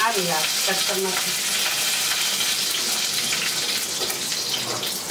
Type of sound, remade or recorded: recorded